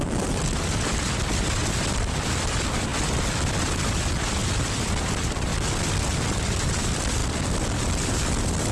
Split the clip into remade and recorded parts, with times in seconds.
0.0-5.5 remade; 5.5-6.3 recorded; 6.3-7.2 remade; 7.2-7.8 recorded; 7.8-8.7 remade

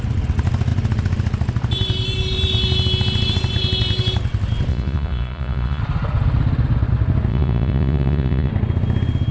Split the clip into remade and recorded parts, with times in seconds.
0.0-4.7 recorded; 4.7-5.8 remade; 5.8-7.3 recorded; 7.3-8.5 remade; 8.5-9.3 recorded

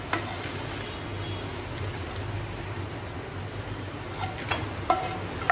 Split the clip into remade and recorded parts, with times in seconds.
0.0-5.5 recorded

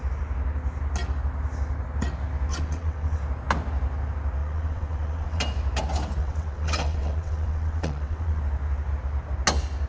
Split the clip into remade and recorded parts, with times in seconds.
0.0-2.5 recorded; 2.5-3.2 remade; 3.2-4.4 recorded; 4.4-5.4 remade; 5.4-6.2 recorded; 6.2-8.4 remade; 8.4-9.9 recorded